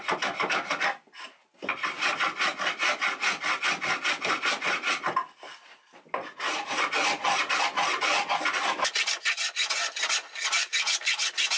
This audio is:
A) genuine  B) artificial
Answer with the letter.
A